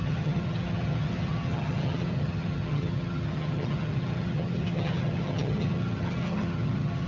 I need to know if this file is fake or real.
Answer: fake